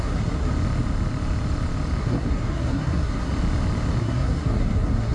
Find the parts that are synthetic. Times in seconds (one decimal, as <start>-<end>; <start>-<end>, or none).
0.0-0.5; 2.0-3.3; 4.0-5.1